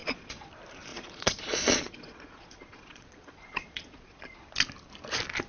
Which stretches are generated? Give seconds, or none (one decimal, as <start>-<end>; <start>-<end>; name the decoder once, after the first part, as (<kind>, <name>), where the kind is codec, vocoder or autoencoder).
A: 0.0-0.5 (vocoder, Vocos); 0.9-4.2